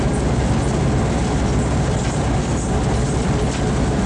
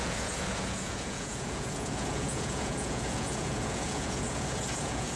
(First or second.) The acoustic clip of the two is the first